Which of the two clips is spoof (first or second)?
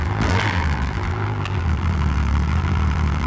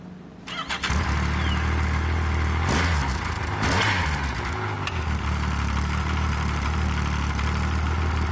first